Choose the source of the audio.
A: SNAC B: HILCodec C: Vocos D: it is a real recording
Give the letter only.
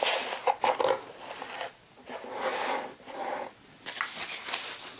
D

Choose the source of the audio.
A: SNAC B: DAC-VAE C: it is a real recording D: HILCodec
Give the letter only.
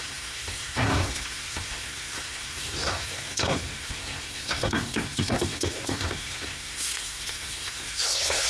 A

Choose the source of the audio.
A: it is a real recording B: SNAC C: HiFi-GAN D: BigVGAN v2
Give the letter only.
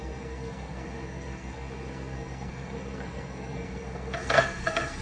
B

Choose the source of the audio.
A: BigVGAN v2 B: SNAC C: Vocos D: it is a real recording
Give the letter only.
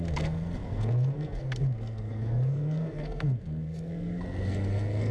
B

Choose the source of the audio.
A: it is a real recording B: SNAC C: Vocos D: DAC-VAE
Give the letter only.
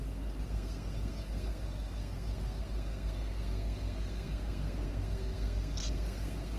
B